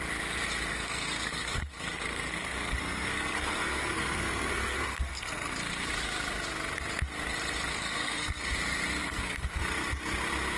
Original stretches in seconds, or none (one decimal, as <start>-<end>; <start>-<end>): 0.0-0.7; 5.9-7.7; 8.5-9.0; 9.6-10.6